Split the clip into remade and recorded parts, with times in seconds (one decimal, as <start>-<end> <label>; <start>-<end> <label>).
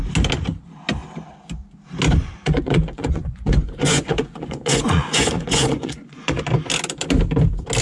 0.0-2.2 recorded; 2.2-6.4 remade; 6.4-7.8 recorded